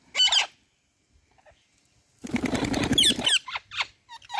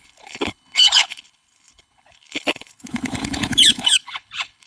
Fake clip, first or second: second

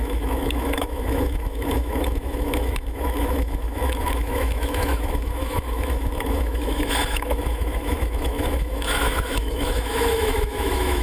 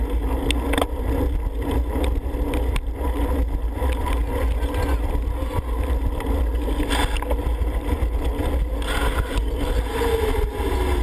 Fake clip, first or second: first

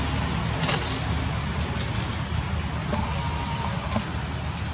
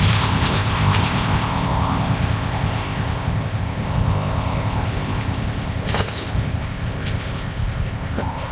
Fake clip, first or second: second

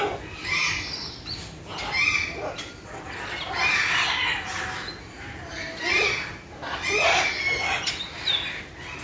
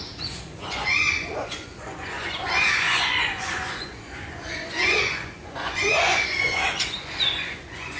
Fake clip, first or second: second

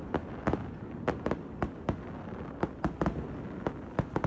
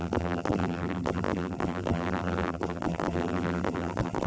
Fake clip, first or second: second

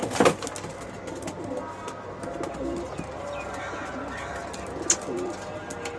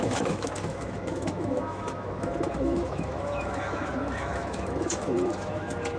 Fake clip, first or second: second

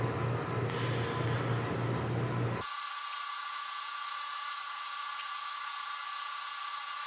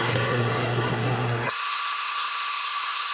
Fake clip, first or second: second